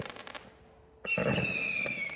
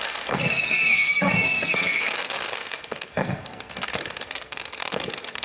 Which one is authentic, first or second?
first